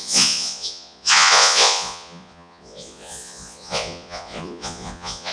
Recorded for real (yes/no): no